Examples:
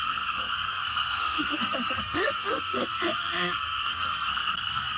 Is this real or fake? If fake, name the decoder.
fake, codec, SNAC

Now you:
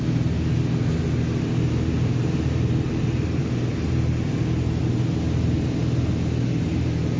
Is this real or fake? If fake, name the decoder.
real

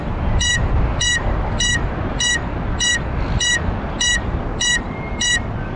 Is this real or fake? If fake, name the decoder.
real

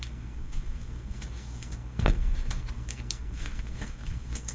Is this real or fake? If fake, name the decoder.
fake, codec, SNAC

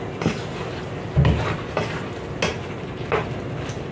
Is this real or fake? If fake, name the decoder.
real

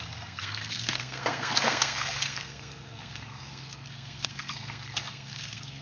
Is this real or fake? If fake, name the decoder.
fake, codec, SNAC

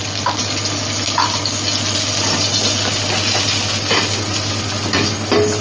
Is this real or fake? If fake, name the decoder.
real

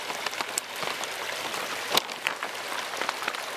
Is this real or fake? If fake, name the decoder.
real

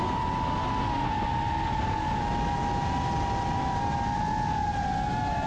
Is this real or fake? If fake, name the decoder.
real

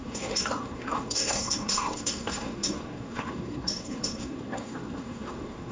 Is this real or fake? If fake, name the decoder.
fake, codec, SNAC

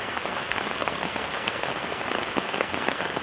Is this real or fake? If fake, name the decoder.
fake, codec, SNAC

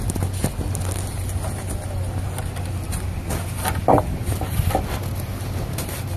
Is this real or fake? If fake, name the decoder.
real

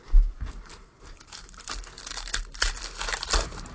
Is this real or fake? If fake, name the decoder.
real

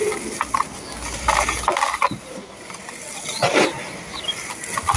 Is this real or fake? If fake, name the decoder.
real